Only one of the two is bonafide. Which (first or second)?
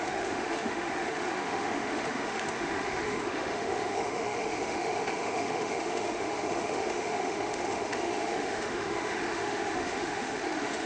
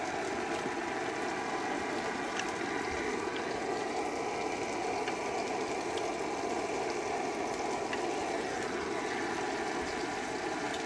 second